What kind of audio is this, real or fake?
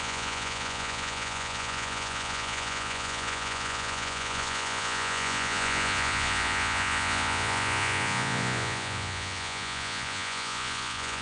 fake